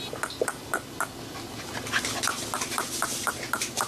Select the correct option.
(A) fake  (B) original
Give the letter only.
B